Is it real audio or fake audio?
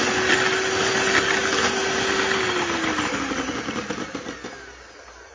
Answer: real